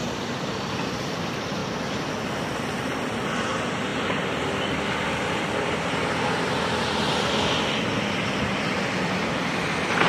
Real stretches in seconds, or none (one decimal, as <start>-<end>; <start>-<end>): 0.0-0.9; 1.6-2.1